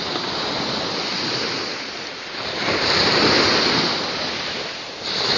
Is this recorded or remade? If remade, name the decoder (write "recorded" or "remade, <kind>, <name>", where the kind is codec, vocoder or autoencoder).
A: recorded